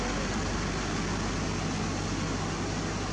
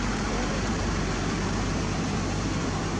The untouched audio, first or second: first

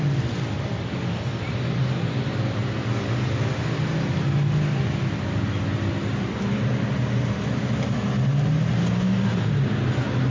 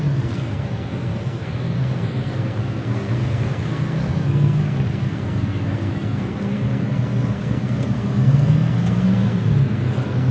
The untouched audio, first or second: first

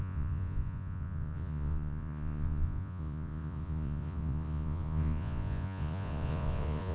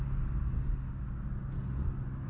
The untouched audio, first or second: second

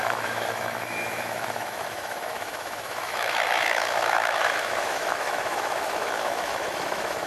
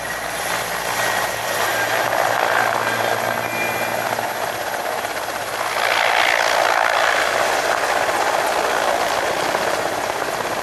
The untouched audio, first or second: second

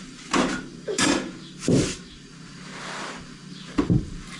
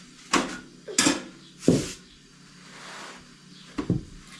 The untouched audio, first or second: second